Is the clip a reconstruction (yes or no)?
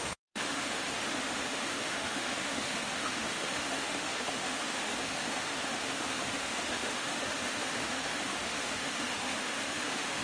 yes